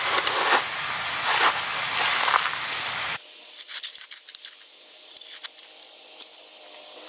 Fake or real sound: real